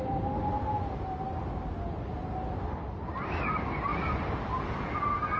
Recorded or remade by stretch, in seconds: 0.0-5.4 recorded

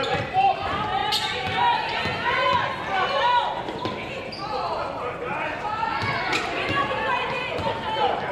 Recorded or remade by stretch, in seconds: 0.0-8.3 recorded

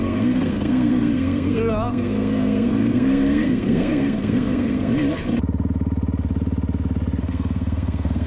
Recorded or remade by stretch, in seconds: 0.0-4.9 remade; 4.9-7.2 recorded; 7.2-8.3 remade